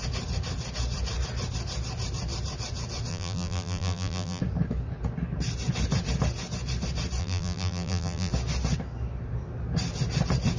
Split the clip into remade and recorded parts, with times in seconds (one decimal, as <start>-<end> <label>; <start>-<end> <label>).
0.0-3.1 recorded; 3.1-4.4 remade; 4.4-7.2 recorded; 7.2-8.3 remade; 8.3-10.6 recorded